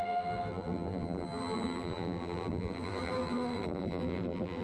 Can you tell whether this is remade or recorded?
remade